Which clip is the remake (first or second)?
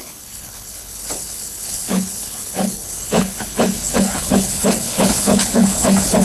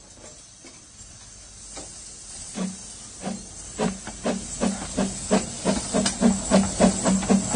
first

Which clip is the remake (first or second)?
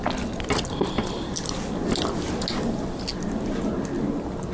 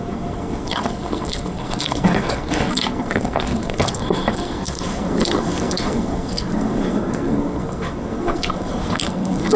second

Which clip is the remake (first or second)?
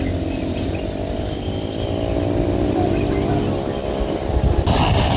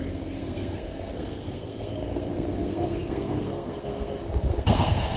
second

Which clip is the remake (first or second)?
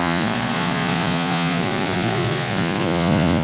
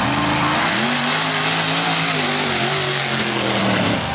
first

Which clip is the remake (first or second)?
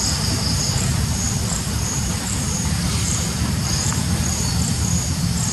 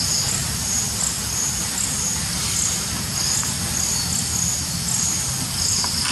first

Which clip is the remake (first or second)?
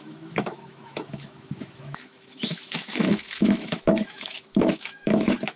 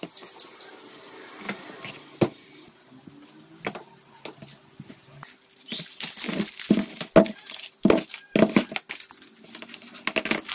first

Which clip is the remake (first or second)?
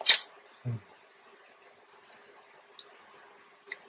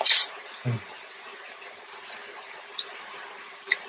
second